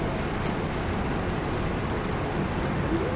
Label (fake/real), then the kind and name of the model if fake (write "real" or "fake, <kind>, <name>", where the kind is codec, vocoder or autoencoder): real